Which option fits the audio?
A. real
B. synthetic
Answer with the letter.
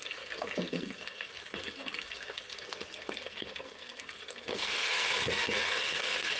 B